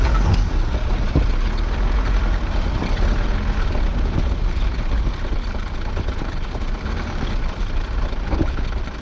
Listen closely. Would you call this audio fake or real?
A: fake